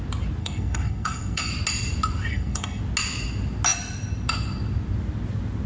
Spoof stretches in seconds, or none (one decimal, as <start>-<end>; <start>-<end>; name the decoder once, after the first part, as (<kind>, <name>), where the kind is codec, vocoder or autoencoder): 0.4-1.5 (codec, SNAC); 2.3-2.8